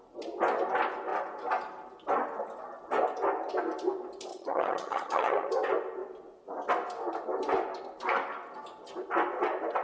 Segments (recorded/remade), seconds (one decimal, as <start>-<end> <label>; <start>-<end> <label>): 0.0-4.3 recorded; 4.3-5.5 remade; 5.5-9.8 recorded